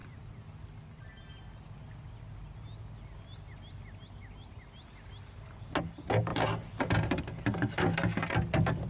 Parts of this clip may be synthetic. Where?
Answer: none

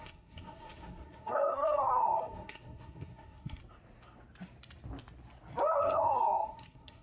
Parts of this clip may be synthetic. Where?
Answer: 0.0-3.6 (codec, SNAC); 5.8-7.0

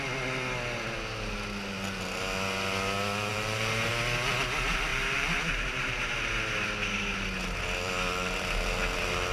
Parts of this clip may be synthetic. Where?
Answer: 3.3-3.9 (vocoder, BigVGAN v2); 4.9-6.3

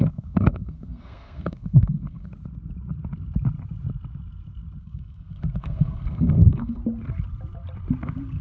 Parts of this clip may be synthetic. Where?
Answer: 0.0-2.3 (codec, SNAC); 4.8-6.8

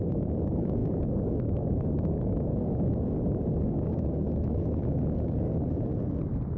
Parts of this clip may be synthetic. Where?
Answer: 0.0-5.9 (codec, DAC)

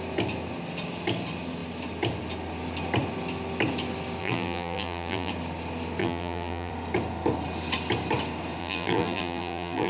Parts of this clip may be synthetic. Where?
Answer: 4.2-5.3 (vocoder, BigVGAN v2); 6.0-6.7; 8.6-9.9